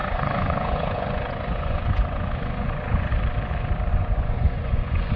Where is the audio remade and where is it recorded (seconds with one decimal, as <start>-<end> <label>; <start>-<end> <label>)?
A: 0.0-3.1 remade; 3.1-3.9 recorded; 3.9-5.2 remade

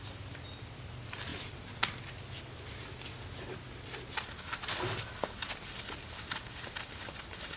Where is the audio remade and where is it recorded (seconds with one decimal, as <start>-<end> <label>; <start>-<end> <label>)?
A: 0.0-7.6 recorded